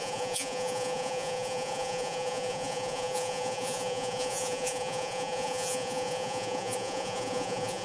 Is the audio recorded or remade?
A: remade